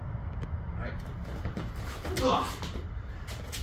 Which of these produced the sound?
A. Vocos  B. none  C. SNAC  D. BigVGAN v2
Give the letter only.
B